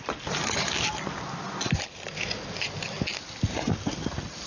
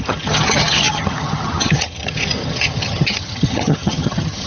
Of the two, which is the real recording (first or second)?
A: first